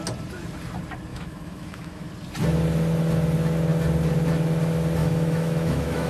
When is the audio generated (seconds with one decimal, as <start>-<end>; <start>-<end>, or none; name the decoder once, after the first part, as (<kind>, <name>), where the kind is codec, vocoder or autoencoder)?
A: 1.1-2.1 (autoencoder, DAC-VAE); 5.0-6.1